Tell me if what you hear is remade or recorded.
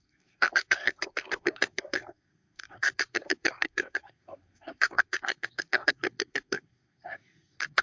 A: remade